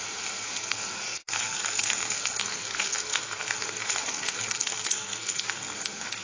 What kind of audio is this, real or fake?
fake